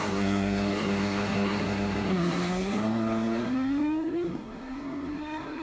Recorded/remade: remade